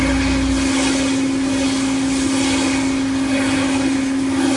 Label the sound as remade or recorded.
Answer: recorded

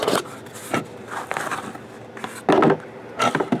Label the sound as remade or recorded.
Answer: recorded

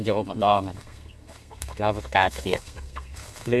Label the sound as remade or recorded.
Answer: remade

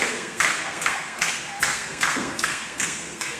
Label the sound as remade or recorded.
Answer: remade